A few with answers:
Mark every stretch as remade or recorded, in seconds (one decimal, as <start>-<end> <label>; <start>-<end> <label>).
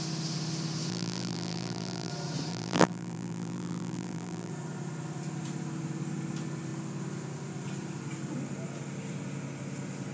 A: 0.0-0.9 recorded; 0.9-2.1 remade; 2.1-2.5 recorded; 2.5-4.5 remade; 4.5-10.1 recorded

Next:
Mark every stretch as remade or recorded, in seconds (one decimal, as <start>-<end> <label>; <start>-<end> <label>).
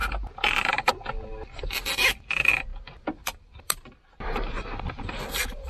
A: 0.0-0.9 remade; 0.9-5.7 recorded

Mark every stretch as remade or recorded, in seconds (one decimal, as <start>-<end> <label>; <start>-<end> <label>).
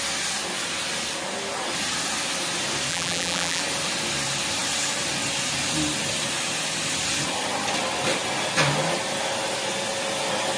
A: 0.0-2.9 recorded; 2.9-3.6 remade; 3.6-10.6 recorded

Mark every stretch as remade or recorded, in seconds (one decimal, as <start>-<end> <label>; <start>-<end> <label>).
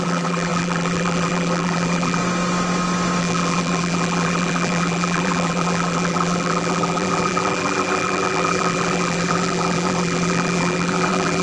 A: 0.0-2.2 remade; 2.2-3.2 recorded; 3.2-11.4 remade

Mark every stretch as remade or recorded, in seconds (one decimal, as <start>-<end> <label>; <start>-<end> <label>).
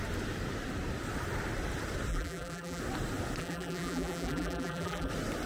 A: 0.0-2.1 recorded; 2.1-2.8 remade; 2.8-3.4 recorded; 3.4-5.1 remade; 5.1-5.5 recorded